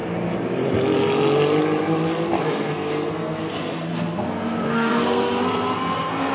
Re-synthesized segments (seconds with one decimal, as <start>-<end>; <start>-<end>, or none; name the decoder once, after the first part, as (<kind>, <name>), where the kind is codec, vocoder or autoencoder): 2.4-6.3 (codec, SNAC)